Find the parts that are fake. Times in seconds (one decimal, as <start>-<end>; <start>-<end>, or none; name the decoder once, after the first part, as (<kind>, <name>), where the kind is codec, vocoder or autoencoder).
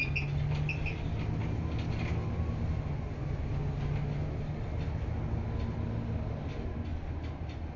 none